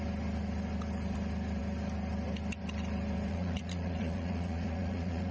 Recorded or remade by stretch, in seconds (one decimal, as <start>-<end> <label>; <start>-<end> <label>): 0.0-3.3 recorded; 3.3-5.3 remade